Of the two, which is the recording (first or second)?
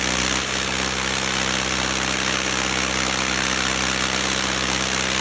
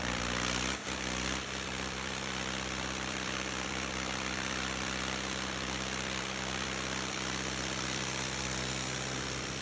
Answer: first